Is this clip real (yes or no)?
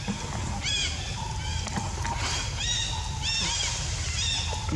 yes